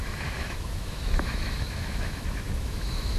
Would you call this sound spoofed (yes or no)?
yes